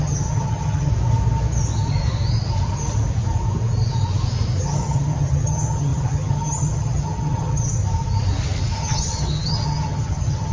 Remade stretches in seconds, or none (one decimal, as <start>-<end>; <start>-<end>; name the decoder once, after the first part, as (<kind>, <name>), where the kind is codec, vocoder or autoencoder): 0.0-0.9 (vocoder, HiFi-GAN); 4.6-7.8; 8.8-10.5